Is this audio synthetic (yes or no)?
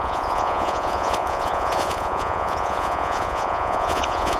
yes